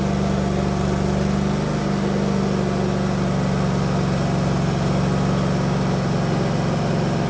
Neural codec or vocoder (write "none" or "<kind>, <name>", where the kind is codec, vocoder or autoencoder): none